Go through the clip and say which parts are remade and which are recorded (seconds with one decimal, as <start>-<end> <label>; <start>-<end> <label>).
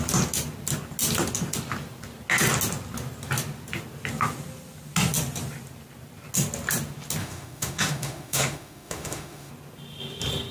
0.0-7.2 recorded; 7.2-9.5 remade; 9.5-10.5 recorded